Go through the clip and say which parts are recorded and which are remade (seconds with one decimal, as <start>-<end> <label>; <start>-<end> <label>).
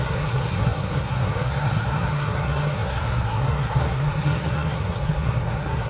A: 0.0-5.9 remade